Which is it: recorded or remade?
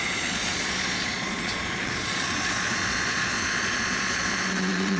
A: remade